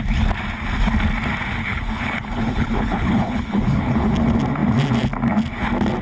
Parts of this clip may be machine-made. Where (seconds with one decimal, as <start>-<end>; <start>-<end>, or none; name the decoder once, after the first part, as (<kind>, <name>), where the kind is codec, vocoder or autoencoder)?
1.6-4.1 (codec, HILCodec)

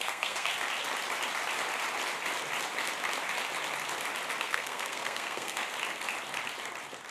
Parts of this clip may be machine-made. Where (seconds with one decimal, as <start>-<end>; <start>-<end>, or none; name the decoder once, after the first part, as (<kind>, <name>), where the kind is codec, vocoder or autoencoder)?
0.0-0.5 (codec, SNAC); 4.4-5.6

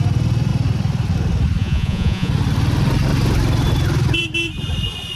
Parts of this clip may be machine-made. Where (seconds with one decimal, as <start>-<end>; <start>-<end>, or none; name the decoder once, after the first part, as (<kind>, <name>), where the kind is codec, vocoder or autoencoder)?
1.6-2.3 (vocoder, Vocos)

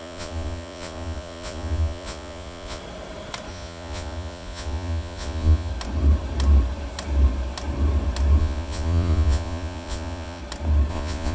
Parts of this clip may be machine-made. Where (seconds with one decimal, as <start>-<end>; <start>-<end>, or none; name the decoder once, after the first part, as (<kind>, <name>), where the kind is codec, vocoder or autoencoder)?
0.0-2.8 (vocoder, Vocos); 3.5-5.7; 8.4-10.4; 10.9-11.3

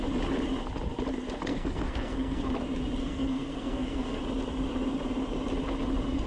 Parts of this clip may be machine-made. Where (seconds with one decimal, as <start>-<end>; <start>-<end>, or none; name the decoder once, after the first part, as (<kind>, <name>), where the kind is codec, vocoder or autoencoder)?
1.5-2.5 (codec, SNAC); 3.0-4.2